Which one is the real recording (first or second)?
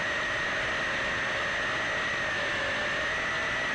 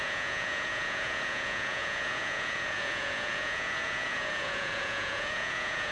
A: first